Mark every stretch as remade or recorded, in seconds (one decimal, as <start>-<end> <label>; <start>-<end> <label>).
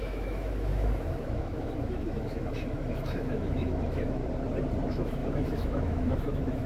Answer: 0.0-4.2 remade; 4.2-4.8 recorded; 4.8-6.7 remade